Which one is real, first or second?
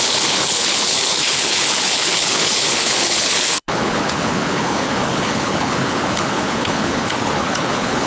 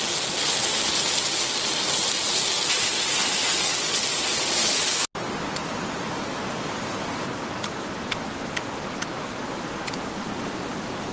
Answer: second